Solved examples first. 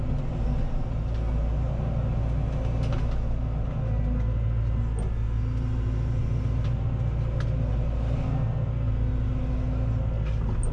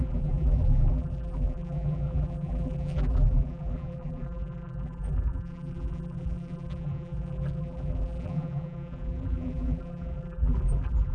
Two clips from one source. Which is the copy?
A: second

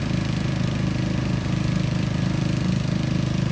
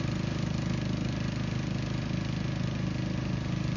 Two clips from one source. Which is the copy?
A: first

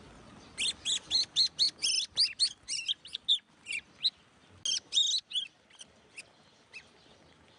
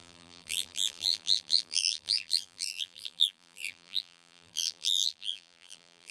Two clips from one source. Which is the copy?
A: second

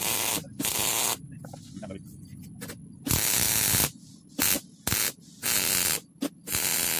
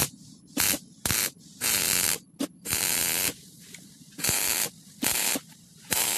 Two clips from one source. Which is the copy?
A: second